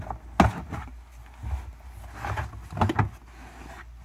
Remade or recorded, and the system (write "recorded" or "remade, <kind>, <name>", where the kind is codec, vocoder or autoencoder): recorded